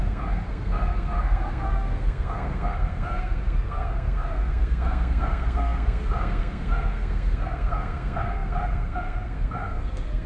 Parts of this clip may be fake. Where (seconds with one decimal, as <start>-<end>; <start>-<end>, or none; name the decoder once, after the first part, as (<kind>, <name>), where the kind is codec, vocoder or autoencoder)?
0.0-10.3 (codec, SNAC)